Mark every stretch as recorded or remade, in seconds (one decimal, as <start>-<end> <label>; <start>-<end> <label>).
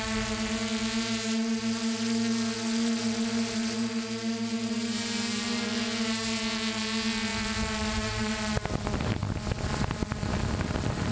0.0-11.1 recorded